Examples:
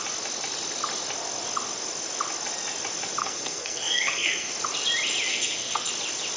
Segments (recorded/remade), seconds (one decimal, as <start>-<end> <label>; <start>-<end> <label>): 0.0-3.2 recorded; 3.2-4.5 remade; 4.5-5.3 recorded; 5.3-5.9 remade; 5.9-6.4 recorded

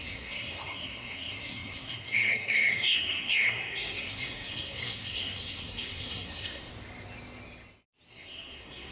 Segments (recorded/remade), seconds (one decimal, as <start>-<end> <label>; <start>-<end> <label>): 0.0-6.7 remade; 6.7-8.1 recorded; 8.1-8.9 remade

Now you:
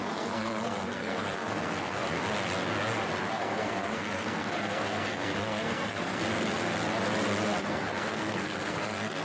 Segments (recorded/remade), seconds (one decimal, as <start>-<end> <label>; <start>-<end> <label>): 0.0-2.0 remade; 2.0-3.3 recorded; 3.3-6.2 remade; 6.2-7.6 recorded; 7.6-9.2 remade

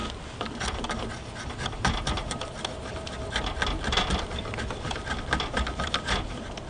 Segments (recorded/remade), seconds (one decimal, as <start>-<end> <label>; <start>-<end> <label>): 0.0-6.7 recorded